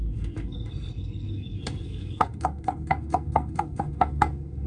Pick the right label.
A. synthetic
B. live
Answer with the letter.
A